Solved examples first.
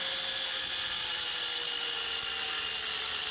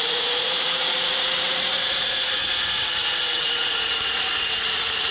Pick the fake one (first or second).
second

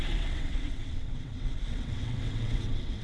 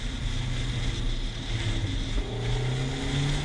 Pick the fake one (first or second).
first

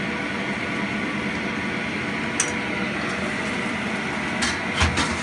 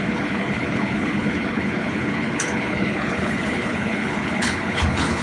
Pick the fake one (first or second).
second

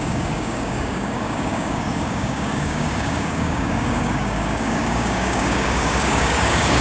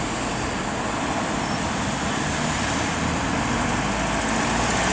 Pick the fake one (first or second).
first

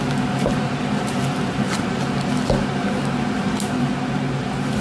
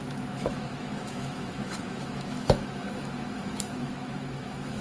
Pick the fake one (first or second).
second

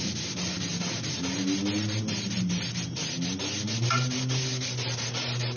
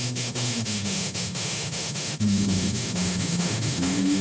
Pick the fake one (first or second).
second